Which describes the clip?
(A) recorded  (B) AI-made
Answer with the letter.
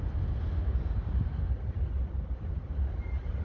A